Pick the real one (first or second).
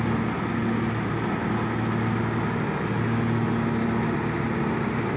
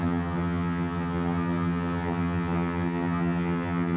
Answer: first